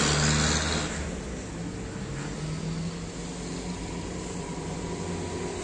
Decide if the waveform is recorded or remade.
recorded